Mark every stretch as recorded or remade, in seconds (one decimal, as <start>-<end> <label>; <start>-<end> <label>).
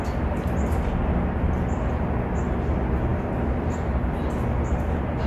0.0-5.3 recorded